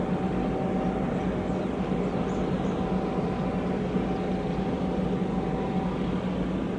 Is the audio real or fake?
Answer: real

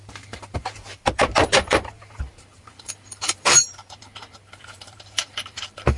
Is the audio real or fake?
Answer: fake